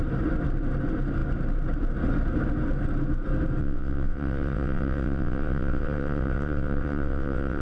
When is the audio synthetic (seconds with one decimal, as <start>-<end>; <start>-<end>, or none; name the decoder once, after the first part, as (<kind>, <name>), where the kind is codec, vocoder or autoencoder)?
3.6-7.6 (vocoder, WaveNeXt)